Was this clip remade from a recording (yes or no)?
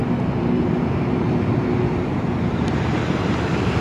yes